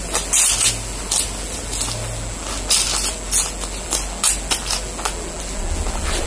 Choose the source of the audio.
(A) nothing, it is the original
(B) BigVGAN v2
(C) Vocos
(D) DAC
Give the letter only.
A